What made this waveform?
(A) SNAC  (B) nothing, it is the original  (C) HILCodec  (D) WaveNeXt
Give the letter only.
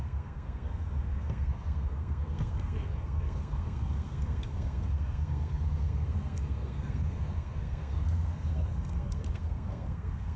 A